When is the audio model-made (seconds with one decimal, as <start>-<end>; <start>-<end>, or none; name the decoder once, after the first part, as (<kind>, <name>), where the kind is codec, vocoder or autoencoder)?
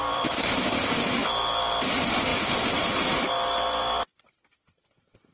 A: 0.0-1.2 (vocoder, BigVGAN v2); 1.9-2.3